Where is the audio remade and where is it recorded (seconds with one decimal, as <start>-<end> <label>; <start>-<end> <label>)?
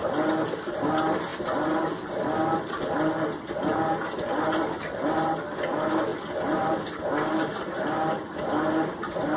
0.0-9.4 recorded